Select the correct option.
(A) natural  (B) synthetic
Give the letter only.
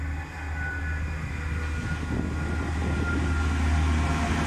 A